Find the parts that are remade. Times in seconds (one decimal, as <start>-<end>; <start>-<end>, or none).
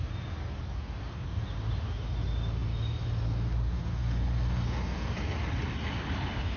none